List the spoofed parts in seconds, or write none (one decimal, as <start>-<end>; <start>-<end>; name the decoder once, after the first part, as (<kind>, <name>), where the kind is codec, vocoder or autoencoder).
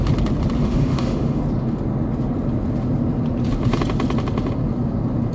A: 0.6-1.4 (autoencoder, DAC-VAE)